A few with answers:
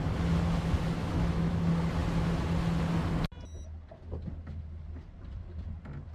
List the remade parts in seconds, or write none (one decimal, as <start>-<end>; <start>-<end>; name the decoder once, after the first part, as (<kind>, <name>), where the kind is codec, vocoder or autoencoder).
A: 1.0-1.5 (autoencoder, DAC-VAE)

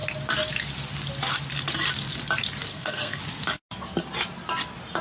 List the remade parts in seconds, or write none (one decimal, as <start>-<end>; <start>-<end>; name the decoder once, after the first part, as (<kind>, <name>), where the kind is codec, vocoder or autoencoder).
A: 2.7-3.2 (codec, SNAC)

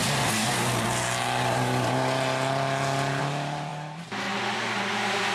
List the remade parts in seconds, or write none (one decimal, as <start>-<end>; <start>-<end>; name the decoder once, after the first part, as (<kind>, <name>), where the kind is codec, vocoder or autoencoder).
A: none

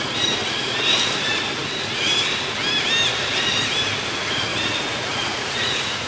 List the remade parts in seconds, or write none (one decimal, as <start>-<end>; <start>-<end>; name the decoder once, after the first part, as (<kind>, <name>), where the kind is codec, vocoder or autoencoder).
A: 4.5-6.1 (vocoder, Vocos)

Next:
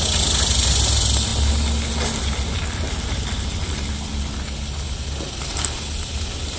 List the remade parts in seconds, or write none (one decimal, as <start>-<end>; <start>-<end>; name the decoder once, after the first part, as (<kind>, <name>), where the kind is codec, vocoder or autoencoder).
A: none